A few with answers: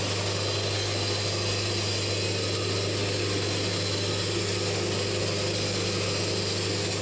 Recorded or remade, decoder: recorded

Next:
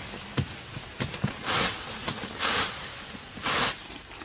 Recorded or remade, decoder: recorded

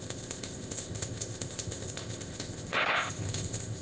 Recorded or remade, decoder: remade, codec, ZipCodec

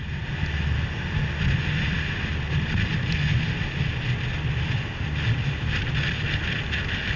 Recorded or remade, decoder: recorded